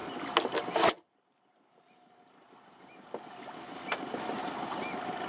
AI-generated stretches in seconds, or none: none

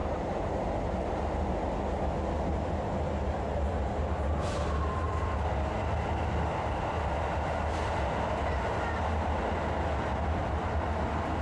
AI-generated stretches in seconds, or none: 0.0-1.1 (vocoder, BigVGAN v2)

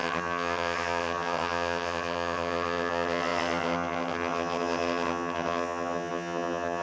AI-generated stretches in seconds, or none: 0.0-6.8 (vocoder, HiFi-GAN)